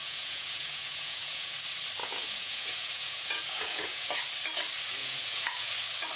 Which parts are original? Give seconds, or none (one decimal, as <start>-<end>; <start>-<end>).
1.5-2.0; 4.1-5.0; 5.7-6.2